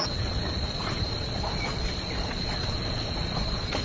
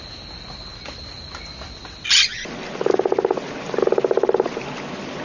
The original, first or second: second